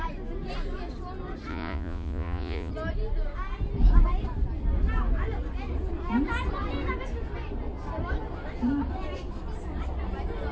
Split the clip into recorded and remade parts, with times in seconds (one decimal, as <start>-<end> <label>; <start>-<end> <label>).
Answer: 0.0-1.5 recorded; 1.5-2.7 remade; 2.7-10.5 recorded